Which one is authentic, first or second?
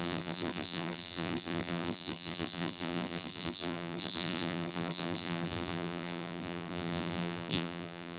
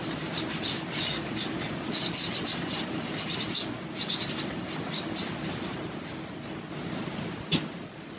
second